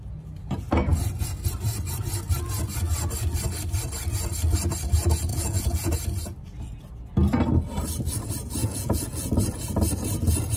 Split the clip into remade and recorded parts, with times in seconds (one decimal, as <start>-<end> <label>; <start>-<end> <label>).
0.0-5.3 recorded; 5.3-5.9 remade; 5.9-8.6 recorded; 8.6-9.3 remade; 9.3-10.6 recorded